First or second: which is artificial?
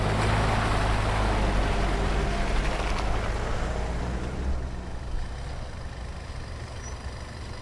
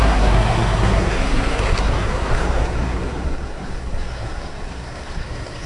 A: second